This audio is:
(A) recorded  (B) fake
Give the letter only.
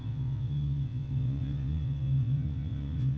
B